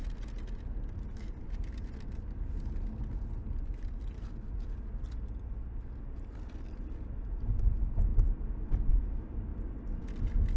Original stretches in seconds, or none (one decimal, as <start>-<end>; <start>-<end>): 0.0-10.6